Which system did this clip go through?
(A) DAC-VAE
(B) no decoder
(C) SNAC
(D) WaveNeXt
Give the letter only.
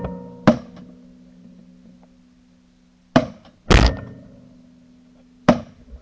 B